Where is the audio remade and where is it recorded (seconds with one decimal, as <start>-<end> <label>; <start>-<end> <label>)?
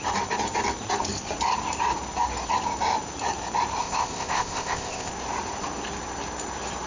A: 0.0-3.8 recorded; 3.8-5.1 remade; 5.1-6.9 recorded